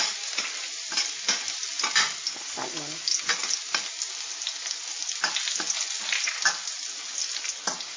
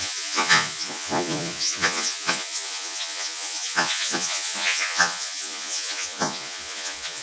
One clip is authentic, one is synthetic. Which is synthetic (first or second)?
second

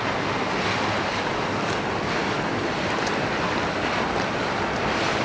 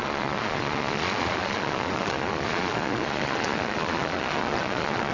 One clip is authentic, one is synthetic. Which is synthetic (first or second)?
second